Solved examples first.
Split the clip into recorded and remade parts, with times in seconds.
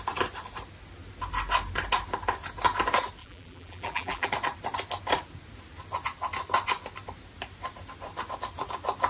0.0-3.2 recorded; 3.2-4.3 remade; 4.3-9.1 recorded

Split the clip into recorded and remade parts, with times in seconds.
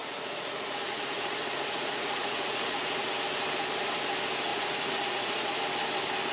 0.0-3.1 remade; 3.1-4.5 recorded; 4.5-5.6 remade; 5.6-6.3 recorded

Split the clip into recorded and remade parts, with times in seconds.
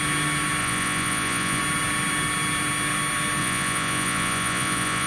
0.0-0.6 recorded; 0.6-1.6 remade; 1.6-3.4 recorded; 3.4-5.1 remade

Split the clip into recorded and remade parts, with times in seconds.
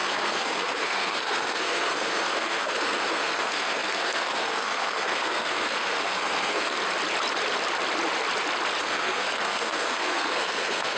0.0-6.8 remade; 6.8-8.8 recorded; 8.8-11.0 remade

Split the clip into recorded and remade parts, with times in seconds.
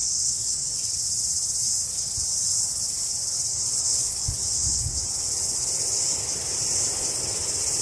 0.0-0.9 remade; 0.9-3.5 recorded; 3.5-5.1 remade; 5.1-7.8 recorded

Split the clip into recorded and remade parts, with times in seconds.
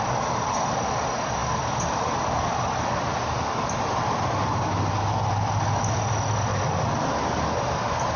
0.0-8.2 recorded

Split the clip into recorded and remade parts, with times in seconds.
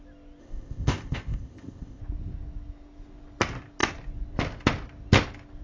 0.0-0.4 recorded; 0.4-2.0 remade; 2.0-5.6 recorded